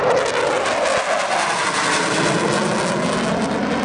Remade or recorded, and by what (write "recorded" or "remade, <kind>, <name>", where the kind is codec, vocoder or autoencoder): recorded